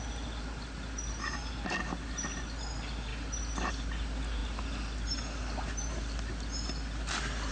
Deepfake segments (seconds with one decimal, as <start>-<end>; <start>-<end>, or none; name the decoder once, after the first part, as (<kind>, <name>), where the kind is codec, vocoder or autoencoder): none